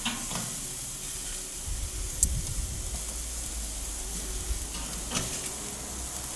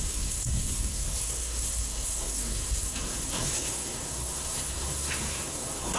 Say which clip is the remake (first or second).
second